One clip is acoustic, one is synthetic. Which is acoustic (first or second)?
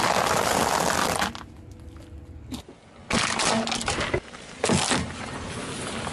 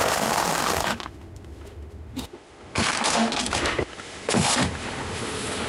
first